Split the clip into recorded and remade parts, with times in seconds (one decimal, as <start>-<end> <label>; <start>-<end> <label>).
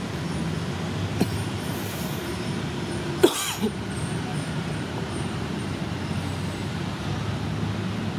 0.0-1.1 recorded; 1.1-2.8 remade; 2.8-4.3 recorded; 4.3-5.6 remade; 5.6-6.6 recorded; 6.6-7.4 remade; 7.4-8.2 recorded